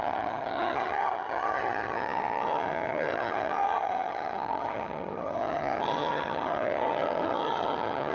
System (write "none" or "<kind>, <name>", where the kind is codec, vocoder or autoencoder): vocoder, HiFi-GAN